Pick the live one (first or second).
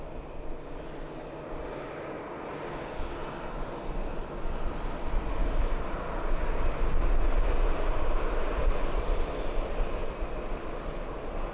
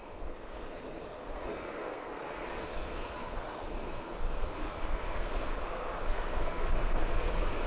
first